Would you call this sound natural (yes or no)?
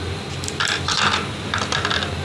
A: yes